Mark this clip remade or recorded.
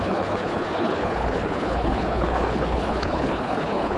remade